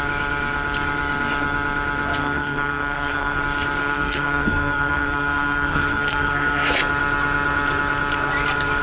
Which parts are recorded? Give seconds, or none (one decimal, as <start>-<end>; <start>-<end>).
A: 0.0-2.2; 3.4-3.8; 6.8-8.8